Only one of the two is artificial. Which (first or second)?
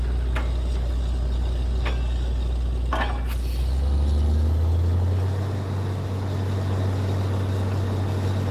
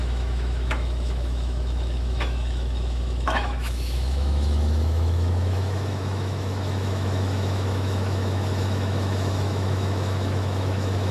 second